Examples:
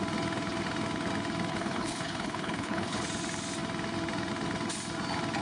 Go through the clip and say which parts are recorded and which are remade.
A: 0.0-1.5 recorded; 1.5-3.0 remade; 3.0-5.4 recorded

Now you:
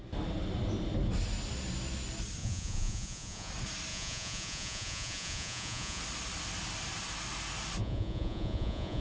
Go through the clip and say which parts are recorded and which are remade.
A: 0.0-2.4 recorded; 2.4-3.5 remade; 3.5-3.9 recorded; 3.9-6.0 remade; 6.0-7.8 recorded; 7.8-9.0 remade

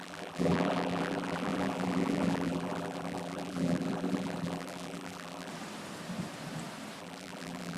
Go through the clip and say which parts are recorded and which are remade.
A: 0.0-5.5 remade; 5.5-7.0 recorded; 7.0-7.8 remade

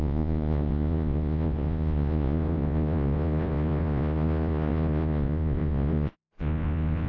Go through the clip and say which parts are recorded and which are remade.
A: 0.0-7.1 remade

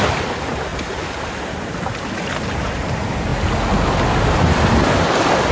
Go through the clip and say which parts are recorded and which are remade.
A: 0.0-5.5 recorded

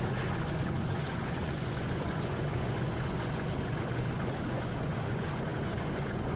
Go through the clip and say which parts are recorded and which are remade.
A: 0.0-6.4 remade